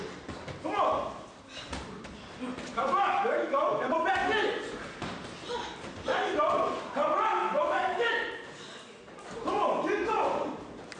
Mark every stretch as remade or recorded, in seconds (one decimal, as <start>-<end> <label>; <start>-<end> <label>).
0.0-2.7 recorded; 2.7-3.9 remade; 3.9-7.4 recorded; 7.4-8.1 remade; 8.1-11.0 recorded